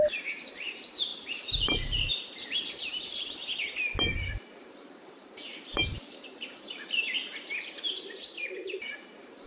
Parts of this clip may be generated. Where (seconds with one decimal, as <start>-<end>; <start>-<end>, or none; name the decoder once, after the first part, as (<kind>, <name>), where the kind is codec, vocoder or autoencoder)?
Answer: 0.0-3.5 (vocoder, BigVGAN v2); 4.1-9.5